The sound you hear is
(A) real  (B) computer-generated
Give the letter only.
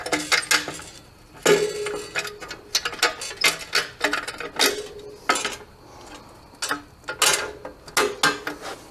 A